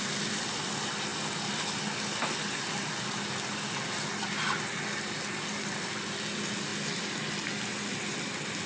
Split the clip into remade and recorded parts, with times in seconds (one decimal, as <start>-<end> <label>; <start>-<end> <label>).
0.0-8.7 recorded